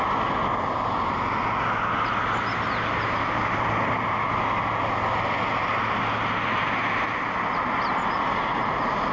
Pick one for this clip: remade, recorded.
recorded